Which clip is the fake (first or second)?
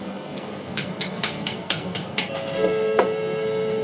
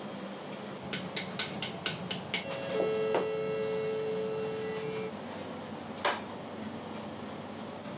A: first